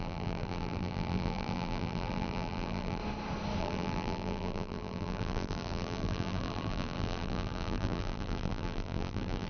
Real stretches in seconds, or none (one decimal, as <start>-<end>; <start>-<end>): 3.0-3.6